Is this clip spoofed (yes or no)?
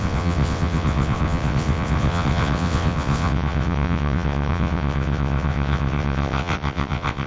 yes